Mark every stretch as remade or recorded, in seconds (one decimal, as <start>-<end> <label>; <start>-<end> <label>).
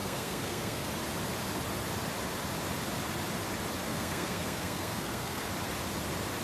0.0-0.9 remade; 0.9-3.9 recorded; 3.9-5.5 remade; 5.5-6.4 recorded